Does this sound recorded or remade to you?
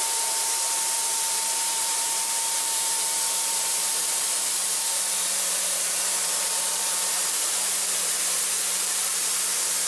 remade